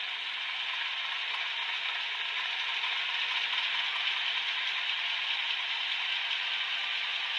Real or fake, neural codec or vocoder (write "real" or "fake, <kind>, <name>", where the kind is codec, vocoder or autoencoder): real